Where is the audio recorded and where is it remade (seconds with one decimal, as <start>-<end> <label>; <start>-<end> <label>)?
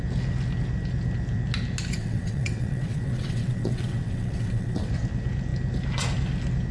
0.0-2.0 recorded; 2.0-4.9 remade; 4.9-6.7 recorded